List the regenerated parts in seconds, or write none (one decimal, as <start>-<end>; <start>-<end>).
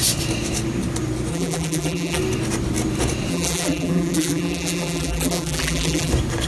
1.3-2.2; 3.3-6.1